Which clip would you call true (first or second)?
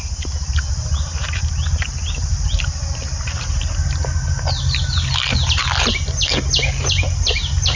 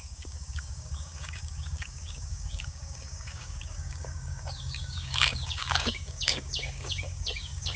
first